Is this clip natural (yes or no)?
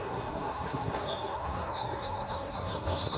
no